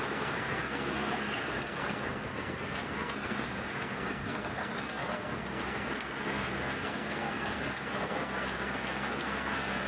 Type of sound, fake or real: fake